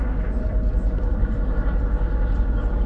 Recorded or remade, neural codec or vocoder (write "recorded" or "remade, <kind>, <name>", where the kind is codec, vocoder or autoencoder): recorded